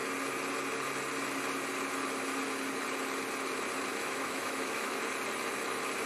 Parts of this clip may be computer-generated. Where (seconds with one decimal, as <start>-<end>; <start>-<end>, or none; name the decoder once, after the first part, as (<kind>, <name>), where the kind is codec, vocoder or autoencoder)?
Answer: 3.9-5.0 (autoencoder, DAC-VAE)